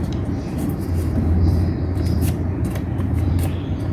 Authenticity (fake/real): fake